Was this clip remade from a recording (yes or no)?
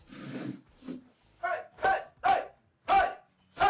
no